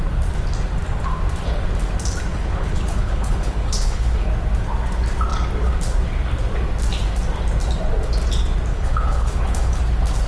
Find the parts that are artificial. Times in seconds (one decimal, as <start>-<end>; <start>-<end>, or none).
2.3-4.3; 8.7-9.8